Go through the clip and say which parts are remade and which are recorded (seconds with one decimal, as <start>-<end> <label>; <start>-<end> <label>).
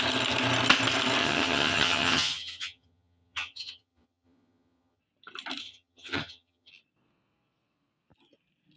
0.0-1.2 recorded; 1.2-5.0 remade; 5.0-5.6 recorded; 5.6-6.7 remade; 6.7-8.8 recorded